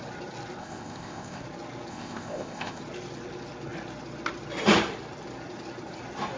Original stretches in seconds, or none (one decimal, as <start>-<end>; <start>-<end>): 0.0-0.6; 1.4-1.9; 2.8-6.4